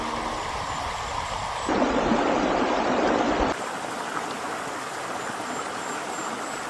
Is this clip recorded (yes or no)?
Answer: yes